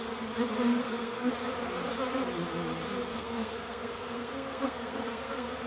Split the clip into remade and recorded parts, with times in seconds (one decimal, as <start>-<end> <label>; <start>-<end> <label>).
0.0-0.7 recorded; 0.7-1.3 remade; 1.3-3.0 recorded; 3.0-5.7 remade